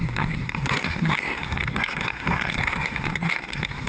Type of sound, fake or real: fake